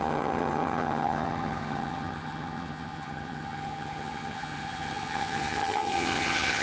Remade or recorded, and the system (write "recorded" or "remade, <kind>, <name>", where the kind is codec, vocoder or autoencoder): remade, vocoder, HiFi-GAN